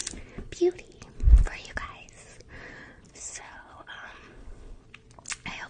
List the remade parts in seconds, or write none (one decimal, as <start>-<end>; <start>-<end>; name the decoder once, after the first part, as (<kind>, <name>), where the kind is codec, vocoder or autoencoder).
3.1-4.8 (codec, HILCodec)